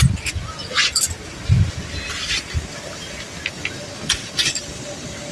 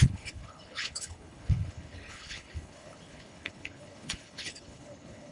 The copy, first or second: second